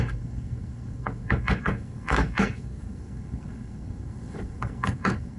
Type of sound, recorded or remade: remade